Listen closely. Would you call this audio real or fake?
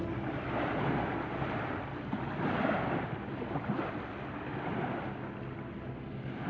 real